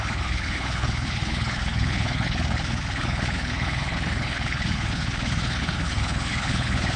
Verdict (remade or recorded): remade